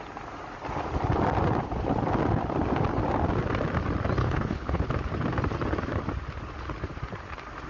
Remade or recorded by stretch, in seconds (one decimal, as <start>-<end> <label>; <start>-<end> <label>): 0.0-4.2 recorded; 4.2-4.9 remade; 4.9-7.7 recorded